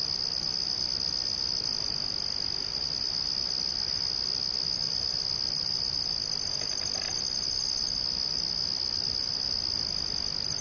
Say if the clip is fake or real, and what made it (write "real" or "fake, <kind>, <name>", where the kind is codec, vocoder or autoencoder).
real